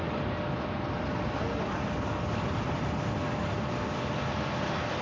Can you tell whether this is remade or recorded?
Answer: recorded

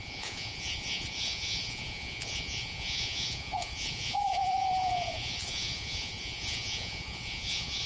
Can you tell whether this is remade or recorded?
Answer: remade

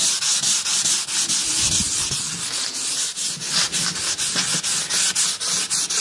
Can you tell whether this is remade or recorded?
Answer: recorded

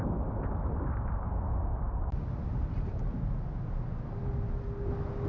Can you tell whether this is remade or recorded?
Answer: recorded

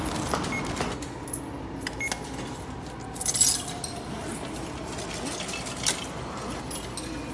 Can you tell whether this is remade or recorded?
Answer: recorded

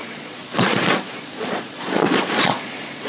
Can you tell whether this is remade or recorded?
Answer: remade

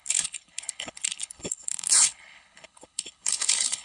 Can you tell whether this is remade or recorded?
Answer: remade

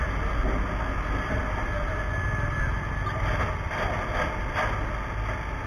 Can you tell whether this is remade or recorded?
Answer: recorded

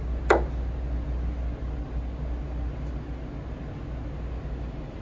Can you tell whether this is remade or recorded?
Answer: recorded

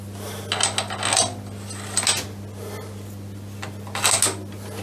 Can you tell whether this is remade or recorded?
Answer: recorded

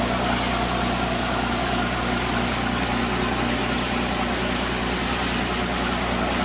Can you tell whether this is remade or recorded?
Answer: recorded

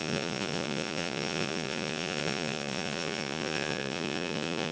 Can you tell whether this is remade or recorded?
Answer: remade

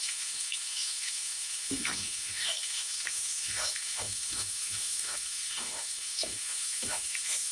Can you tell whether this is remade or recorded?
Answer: remade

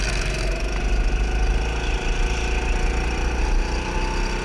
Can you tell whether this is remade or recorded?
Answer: recorded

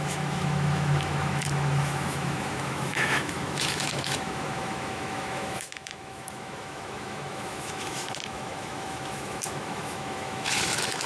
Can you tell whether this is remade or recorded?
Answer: remade